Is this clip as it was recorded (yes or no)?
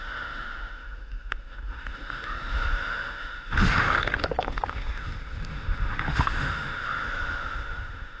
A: no